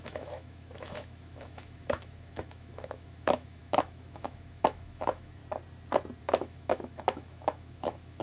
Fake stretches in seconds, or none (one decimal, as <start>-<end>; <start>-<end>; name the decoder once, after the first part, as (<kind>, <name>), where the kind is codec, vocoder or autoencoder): 0.0-5.4 (autoencoder, DAC-VAE); 6.2-8.2